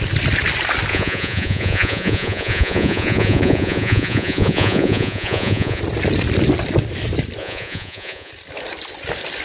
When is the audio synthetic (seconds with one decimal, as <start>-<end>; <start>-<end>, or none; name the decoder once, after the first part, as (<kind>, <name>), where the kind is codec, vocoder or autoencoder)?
0.9-5.8 (vocoder, Vocos); 7.4-8.3

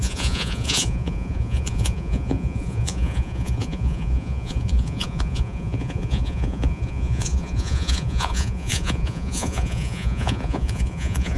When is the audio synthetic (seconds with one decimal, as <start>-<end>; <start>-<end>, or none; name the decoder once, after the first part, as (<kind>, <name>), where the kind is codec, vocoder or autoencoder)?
0.0-11.4 (vocoder, Vocos)

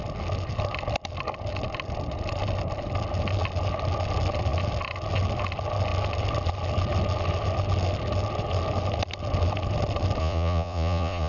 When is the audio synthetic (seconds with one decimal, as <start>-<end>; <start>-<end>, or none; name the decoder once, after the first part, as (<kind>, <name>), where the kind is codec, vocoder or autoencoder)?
10.2-11.3 (vocoder, Vocos)

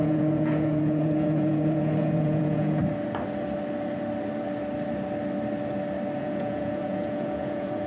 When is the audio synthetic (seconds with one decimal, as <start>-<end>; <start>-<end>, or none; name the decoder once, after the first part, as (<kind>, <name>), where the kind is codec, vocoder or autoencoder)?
0.0-2.8 (vocoder, Vocos); 6.2-7.9

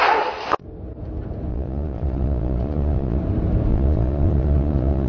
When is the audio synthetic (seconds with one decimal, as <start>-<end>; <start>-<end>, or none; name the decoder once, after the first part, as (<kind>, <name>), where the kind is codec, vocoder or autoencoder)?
1.5-3.2 (vocoder, Vocos); 3.7-5.1